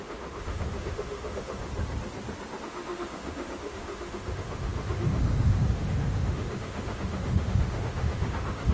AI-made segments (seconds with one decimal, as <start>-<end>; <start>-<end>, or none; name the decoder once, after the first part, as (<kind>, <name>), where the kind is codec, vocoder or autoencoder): 0.0-1.7 (autoencoder, DAC-VAE); 2.6-8.7